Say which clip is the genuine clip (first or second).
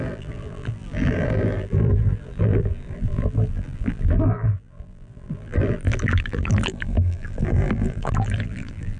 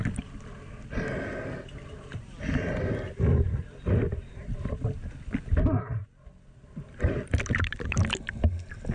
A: second